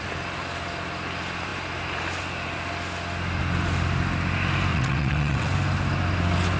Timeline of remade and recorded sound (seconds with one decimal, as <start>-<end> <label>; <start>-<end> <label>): 0.0-4.7 recorded; 4.7-5.5 remade; 5.5-6.6 recorded